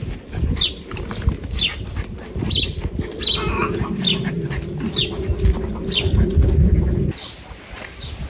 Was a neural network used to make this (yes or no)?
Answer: no